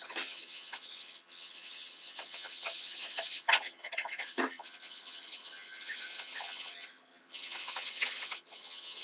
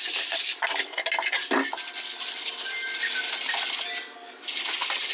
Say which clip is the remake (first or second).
first